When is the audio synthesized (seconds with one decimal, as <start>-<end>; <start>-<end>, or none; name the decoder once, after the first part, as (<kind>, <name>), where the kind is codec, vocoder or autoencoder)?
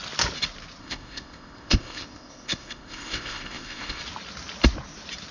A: 0.8-4.0 (codec, ZipCodec)